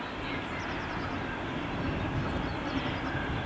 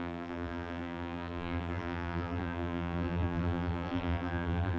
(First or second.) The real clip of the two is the first